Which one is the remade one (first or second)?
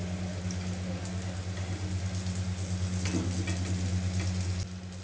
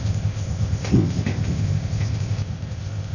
second